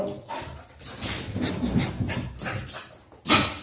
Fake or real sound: real